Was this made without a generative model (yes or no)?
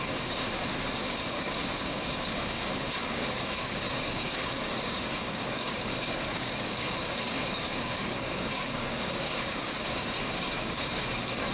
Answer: no